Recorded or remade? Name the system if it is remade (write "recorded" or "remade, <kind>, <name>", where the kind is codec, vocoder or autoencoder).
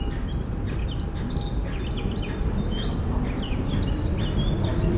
recorded